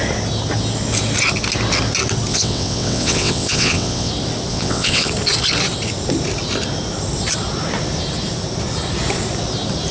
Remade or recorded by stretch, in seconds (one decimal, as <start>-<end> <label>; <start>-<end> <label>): 0.0-2.3 recorded; 2.3-4.1 remade; 4.1-4.5 recorded; 4.5-5.1 remade; 5.1-9.9 recorded